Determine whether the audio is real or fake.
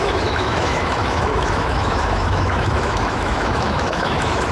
fake